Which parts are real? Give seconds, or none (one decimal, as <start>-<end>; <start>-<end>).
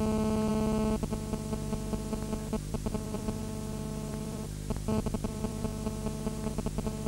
0.5-2.7; 3.4-4.1; 5.7-7.1